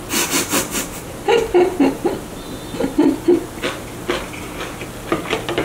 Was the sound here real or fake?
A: real